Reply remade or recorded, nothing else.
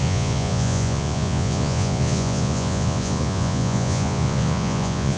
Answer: remade